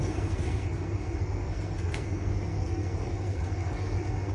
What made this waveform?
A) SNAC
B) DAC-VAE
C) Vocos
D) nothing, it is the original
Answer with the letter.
A